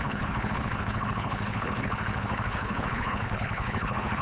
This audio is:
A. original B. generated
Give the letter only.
B